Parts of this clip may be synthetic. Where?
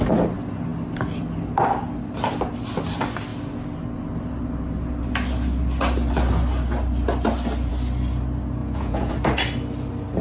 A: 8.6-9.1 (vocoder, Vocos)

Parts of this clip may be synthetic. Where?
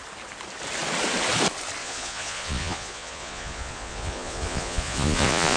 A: 1.8-5.6 (vocoder, Vocos)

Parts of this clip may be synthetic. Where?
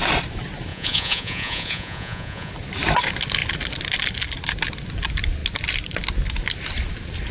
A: 0.7-2.5 (vocoder, Vocos)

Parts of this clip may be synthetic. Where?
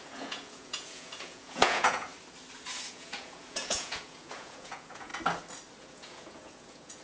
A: 0.0-2.1 (vocoder, Vocos); 2.9-5.1; 5.8-7.0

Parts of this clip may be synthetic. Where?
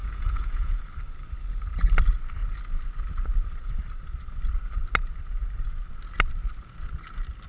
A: 0.0-0.8 (vocoder, Vocos)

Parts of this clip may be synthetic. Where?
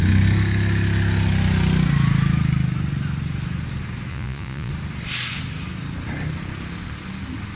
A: 4.1-4.7 (vocoder, Vocos)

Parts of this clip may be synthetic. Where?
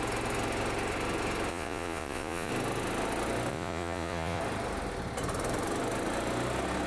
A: 1.5-2.5 (vocoder, Vocos); 3.5-4.4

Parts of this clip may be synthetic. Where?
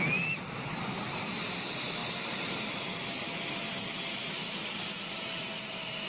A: none